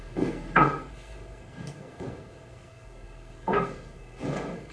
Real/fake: fake